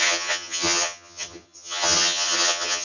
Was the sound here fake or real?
fake